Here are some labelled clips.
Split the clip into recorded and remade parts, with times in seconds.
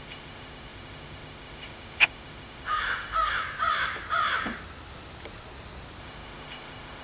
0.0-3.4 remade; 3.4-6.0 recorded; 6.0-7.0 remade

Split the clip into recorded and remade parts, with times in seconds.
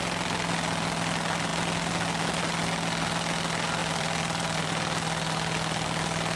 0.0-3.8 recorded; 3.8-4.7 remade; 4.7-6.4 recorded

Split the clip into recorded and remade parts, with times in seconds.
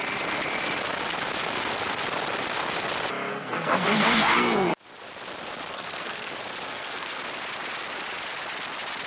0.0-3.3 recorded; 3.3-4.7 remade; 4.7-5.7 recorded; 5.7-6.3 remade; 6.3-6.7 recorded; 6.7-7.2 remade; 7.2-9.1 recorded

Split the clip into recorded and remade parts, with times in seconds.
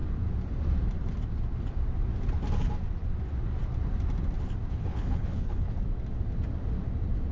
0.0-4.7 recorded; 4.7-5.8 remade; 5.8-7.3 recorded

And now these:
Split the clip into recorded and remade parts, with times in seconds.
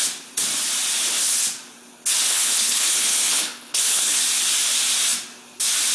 0.0-2.3 recorded; 2.3-4.2 remade; 4.2-5.9 recorded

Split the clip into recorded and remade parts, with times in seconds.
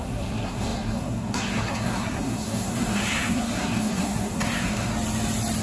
0.0-4.9 remade; 4.9-5.6 recorded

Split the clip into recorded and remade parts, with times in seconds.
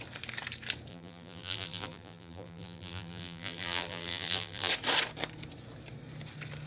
0.0-0.9 recorded; 0.9-4.7 remade; 4.7-6.7 recorded